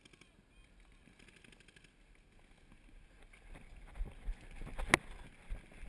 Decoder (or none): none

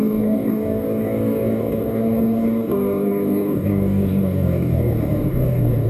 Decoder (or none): codec, DAC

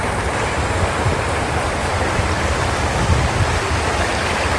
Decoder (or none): vocoder, BigVGAN v2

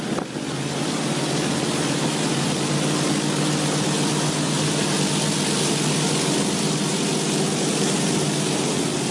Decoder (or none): none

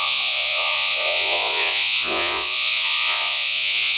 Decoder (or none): vocoder, Vocos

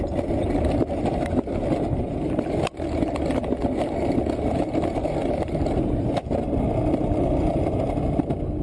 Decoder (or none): none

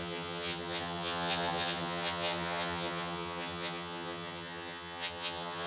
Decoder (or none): vocoder, HiFi-GAN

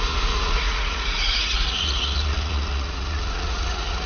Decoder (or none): vocoder, Vocos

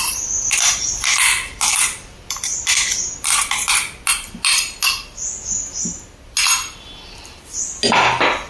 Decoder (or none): none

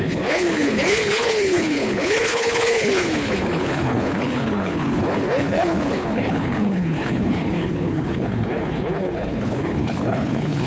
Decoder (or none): codec, HILCodec